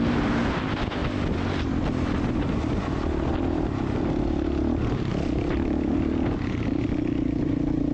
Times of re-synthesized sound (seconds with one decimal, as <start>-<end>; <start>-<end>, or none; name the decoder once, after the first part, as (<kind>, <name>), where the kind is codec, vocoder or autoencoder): none